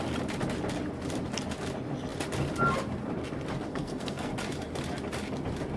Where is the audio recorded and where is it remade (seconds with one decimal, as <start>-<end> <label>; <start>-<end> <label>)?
0.0-3.7 recorded; 3.7-4.3 remade; 4.3-5.8 recorded